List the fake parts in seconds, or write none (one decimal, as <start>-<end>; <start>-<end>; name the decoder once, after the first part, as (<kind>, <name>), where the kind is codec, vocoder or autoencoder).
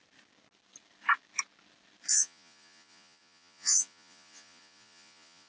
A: 2.1-5.5 (vocoder, Vocos)